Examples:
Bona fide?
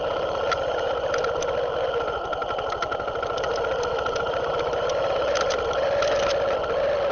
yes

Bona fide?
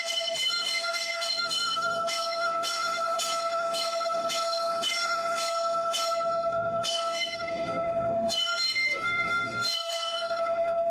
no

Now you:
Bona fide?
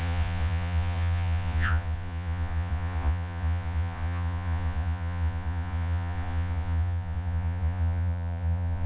no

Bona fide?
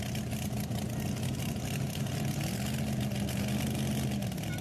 yes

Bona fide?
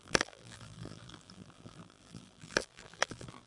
no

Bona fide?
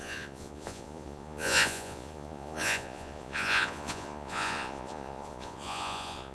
no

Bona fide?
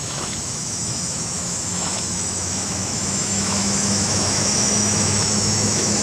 no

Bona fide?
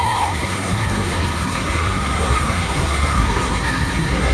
no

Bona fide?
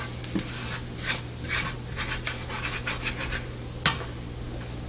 yes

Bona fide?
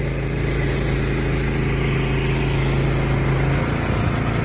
yes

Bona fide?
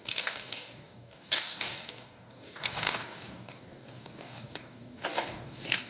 no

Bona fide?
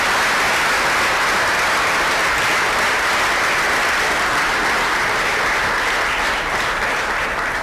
yes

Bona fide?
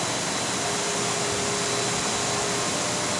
yes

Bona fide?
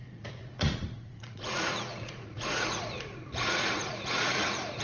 no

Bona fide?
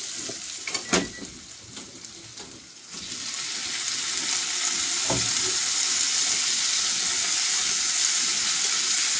yes